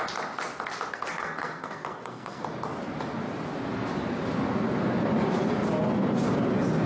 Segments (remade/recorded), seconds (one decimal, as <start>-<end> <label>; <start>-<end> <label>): 0.0-0.9 recorded; 0.9-2.4 remade; 2.4-6.9 recorded